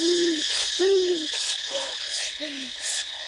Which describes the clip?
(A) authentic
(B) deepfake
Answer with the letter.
B